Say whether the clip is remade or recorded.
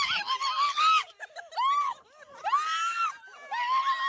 recorded